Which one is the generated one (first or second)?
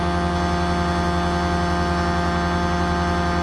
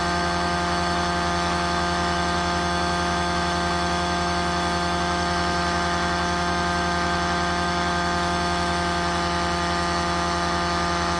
second